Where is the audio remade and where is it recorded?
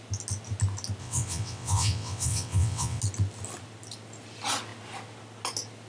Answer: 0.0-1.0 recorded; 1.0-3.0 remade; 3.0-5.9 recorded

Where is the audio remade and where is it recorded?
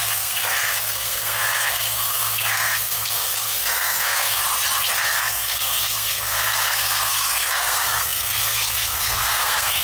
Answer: 0.0-4.4 remade; 4.4-5.0 recorded; 5.0-9.8 remade